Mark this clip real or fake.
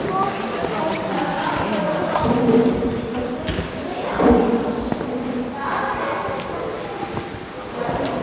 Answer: real